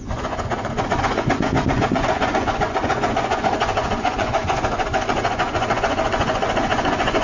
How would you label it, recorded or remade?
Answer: remade